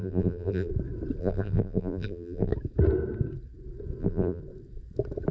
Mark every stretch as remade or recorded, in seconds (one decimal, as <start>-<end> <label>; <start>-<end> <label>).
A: 0.0-0.7 remade; 0.7-1.2 recorded; 1.2-2.5 remade; 2.5-4.0 recorded; 4.0-4.4 remade; 4.4-5.3 recorded